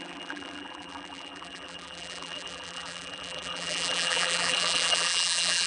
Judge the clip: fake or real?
fake